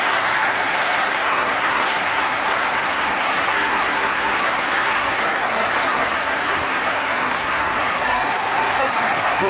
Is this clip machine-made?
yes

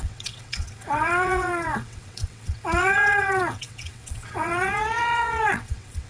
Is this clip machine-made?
yes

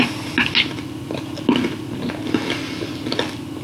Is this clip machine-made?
no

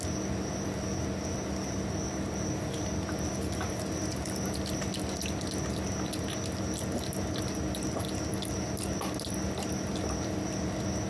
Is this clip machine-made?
no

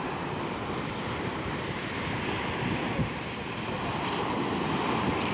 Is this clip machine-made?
yes